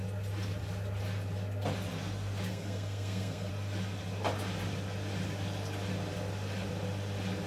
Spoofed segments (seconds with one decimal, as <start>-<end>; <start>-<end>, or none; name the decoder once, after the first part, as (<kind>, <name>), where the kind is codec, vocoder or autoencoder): 2.5-3.5 (codec, SNAC)